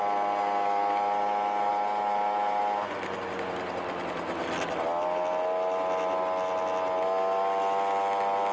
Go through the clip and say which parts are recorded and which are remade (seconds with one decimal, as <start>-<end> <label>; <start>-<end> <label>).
0.0-8.5 recorded